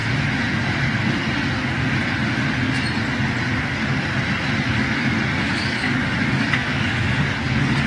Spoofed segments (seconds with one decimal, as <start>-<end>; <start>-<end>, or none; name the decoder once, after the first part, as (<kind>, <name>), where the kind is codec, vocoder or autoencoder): 4.7-7.9 (codec, DAC)